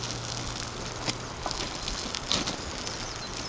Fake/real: real